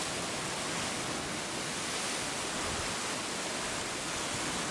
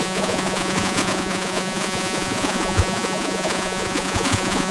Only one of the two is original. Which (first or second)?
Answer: first